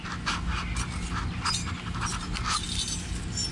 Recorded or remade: recorded